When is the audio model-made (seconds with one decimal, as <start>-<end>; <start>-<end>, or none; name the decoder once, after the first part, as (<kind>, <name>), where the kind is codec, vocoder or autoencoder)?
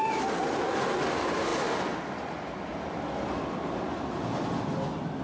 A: none